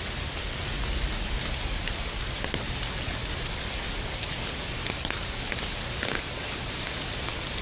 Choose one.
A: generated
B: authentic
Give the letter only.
B